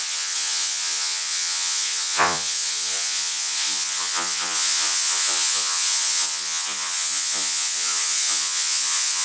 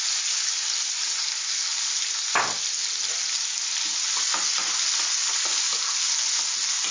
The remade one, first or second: first